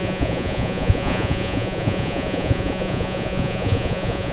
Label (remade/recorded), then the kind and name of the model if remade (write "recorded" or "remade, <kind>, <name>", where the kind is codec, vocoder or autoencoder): remade, vocoder, Vocos